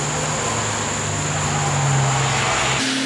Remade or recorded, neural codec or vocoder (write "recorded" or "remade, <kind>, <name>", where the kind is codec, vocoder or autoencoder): recorded